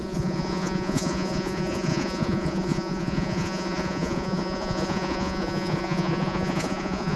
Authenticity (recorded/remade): remade